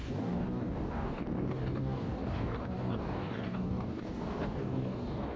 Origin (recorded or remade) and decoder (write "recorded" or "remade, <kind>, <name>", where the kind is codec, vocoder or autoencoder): remade, codec, DAC